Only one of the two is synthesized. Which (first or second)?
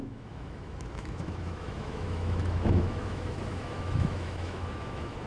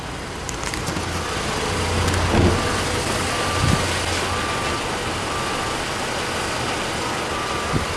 first